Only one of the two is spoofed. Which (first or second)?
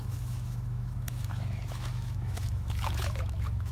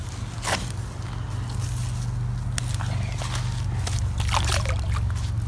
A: first